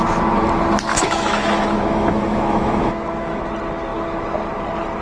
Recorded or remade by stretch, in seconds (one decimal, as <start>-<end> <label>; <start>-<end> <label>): 0.0-0.9 recorded; 0.9-3.4 remade; 3.4-5.0 recorded